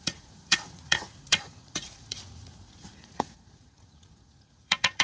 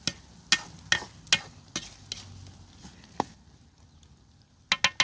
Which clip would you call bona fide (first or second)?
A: second